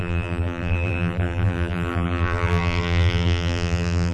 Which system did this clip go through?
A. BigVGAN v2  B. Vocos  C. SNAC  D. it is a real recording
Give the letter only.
A